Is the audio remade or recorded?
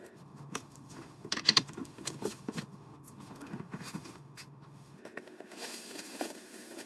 remade